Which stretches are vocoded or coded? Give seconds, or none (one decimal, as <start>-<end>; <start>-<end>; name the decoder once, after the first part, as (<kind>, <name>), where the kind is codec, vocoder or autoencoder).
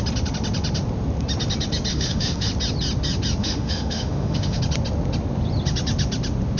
1.9-2.5 (autoencoder, DAC-VAE); 3.4-4.6